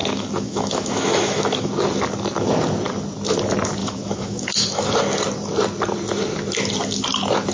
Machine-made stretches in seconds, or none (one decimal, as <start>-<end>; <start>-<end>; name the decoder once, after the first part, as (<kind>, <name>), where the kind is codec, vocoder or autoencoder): 0.0-1.7 (autoencoder, DAC-VAE); 3.8-4.8

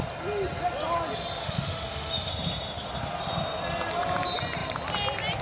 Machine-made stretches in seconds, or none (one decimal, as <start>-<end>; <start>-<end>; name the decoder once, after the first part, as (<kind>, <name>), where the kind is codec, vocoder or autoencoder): 1.4-2.3 (autoencoder, DAC-VAE)

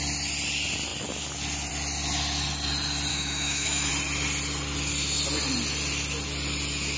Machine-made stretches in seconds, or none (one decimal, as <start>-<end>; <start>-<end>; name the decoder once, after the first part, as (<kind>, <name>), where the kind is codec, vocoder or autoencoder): 3.1-3.9 (autoencoder, DAC-VAE)